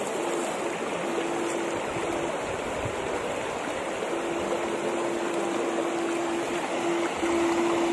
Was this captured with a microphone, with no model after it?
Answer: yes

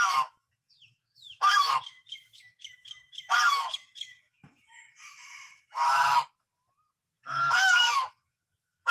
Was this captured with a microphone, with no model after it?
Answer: no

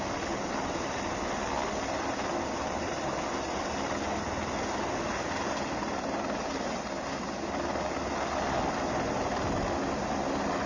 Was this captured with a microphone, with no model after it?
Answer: yes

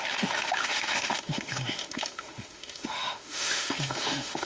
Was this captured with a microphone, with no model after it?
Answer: no